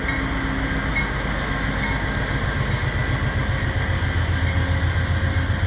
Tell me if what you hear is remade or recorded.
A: recorded